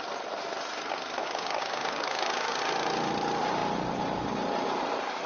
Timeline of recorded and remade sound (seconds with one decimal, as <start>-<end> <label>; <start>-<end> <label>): 0.0-1.2 recorded; 1.2-2.6 remade; 2.6-5.3 recorded